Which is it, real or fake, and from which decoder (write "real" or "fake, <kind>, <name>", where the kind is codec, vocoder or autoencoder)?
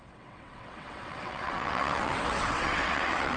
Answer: fake, vocoder, WaveNeXt